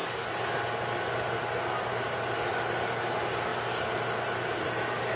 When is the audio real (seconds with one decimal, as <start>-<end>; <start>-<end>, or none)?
0.0-5.2